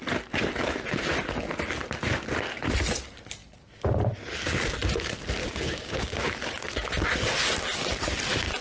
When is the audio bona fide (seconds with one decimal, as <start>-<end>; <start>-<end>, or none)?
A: 0.0-5.4; 6.3-8.6